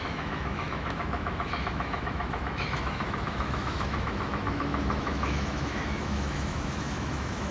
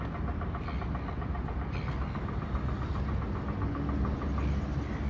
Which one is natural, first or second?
second